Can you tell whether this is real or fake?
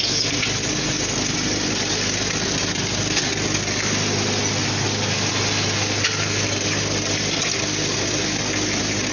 real